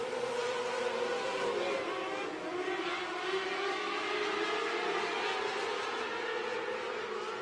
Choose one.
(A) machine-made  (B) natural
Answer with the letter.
B